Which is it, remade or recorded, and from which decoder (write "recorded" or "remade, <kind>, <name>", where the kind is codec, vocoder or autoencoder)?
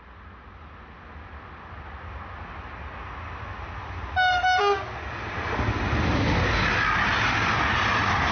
recorded